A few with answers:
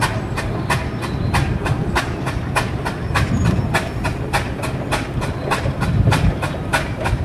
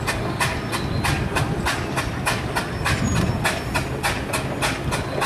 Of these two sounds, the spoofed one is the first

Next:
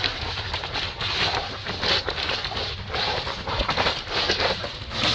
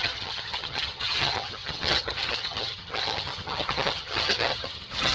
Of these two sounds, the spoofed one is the second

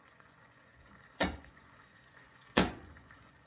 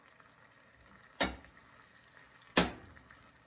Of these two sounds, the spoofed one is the first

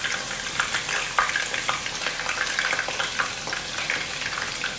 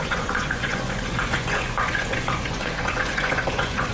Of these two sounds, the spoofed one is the second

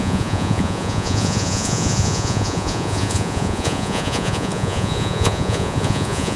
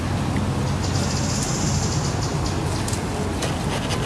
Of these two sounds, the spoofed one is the first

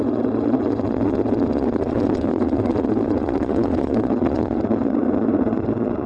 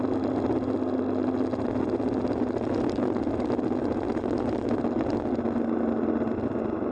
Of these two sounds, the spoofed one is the first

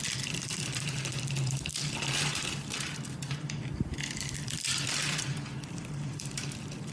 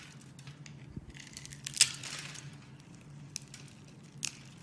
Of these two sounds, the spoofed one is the first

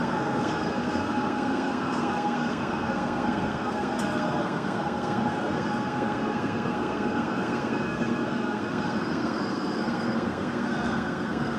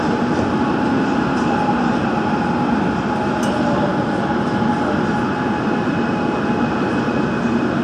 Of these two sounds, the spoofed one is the first